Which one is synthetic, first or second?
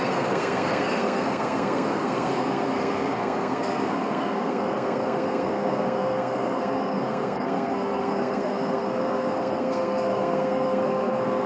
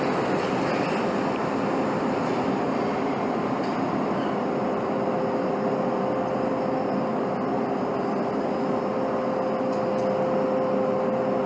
first